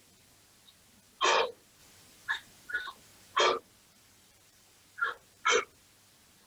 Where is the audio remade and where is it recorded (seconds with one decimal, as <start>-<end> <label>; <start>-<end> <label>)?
0.0-1.8 recorded; 1.8-3.4 remade; 3.4-3.9 recorded; 3.9-5.8 remade; 5.8-6.5 recorded